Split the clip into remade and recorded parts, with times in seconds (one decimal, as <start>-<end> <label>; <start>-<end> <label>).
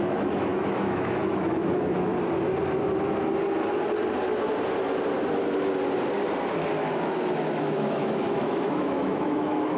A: 0.0-2.1 remade; 2.1-6.7 recorded; 6.7-9.8 remade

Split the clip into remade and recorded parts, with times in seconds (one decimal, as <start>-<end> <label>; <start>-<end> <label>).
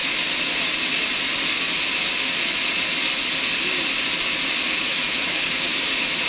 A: 0.0-4.9 recorded; 4.9-5.4 remade; 5.4-6.3 recorded